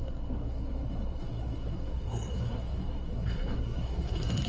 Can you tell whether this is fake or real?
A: fake